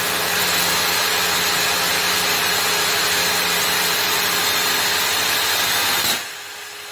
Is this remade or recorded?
recorded